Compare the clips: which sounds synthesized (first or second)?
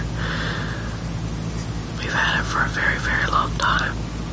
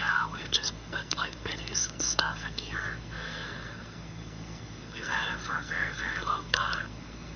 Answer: second